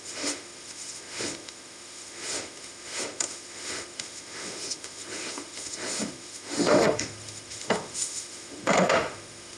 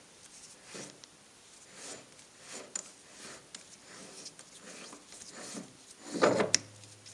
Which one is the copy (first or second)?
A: first